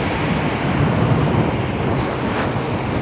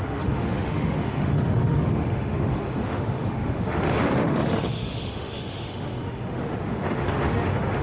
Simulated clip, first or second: second